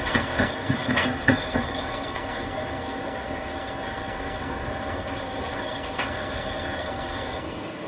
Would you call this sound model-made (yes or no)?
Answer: yes